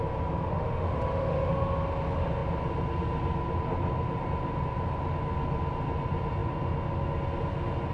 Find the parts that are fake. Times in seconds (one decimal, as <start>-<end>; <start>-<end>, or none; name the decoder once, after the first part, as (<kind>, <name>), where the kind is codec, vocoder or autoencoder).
0.5-1.5 (autoencoder, DAC-VAE)